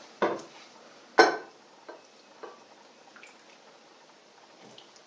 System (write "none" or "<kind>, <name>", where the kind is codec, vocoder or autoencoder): none